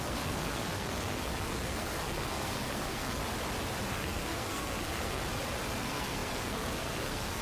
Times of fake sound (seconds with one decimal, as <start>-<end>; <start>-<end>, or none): 0.0-3.2; 3.9-5.2; 5.8-7.4